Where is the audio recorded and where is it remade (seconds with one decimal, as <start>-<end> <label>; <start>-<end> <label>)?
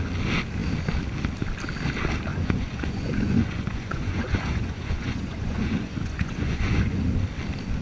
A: 0.0-2.3 recorded; 2.3-7.0 remade; 7.0-7.8 recorded